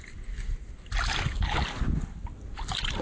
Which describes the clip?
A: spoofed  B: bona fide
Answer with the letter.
B